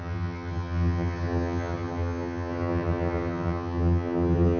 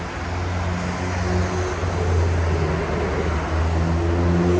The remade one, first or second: first